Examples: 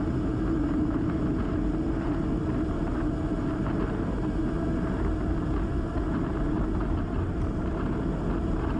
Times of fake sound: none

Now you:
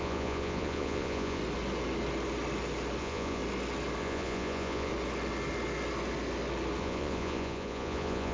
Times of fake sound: 0.0-1.4; 3.0-3.4; 4.0-4.9; 6.8-8.3

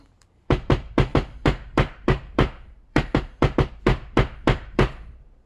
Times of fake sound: 0.0-5.5